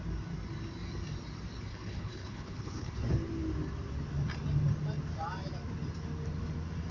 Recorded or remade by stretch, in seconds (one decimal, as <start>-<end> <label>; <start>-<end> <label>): 0.0-1.7 recorded; 1.7-2.9 remade; 2.9-6.9 recorded